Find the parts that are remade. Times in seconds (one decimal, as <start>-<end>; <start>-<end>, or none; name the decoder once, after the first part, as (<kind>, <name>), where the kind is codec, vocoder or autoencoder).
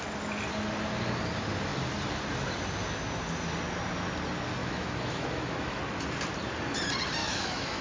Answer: 4.6-5.8 (autoencoder, DAC-VAE); 7.2-7.8